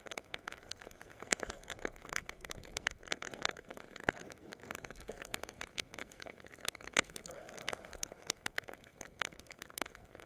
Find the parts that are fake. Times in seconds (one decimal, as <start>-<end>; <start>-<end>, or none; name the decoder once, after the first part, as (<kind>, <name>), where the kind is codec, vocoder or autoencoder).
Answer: 0.0-10.3 (codec, SNAC)